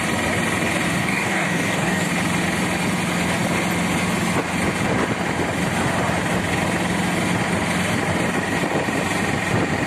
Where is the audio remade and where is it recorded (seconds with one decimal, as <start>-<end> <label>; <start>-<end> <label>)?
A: 0.0-1.0 recorded; 1.0-2.1 remade; 2.1-9.9 recorded

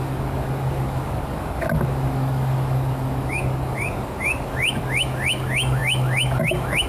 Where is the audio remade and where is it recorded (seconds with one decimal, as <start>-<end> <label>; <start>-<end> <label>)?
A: 0.0-6.9 remade

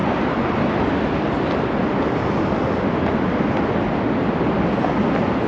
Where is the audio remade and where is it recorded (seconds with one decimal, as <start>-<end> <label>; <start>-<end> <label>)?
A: 0.0-5.5 recorded

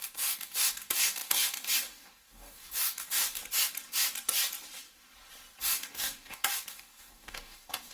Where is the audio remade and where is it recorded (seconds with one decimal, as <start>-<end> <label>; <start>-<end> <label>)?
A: 0.0-3.4 remade; 3.4-5.6 recorded; 5.6-7.9 remade